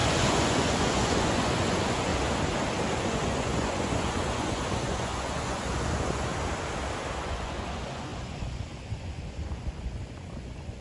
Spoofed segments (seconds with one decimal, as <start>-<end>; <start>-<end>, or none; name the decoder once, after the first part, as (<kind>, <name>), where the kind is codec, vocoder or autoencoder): 0.0-2.1 (vocoder, Vocos); 3.0-6.3; 7.2-10.8